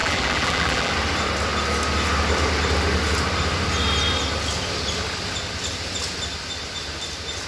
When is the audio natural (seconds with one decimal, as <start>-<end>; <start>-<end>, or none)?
0.9-7.5